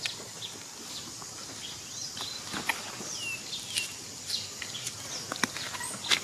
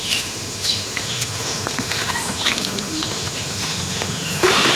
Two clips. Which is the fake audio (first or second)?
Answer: second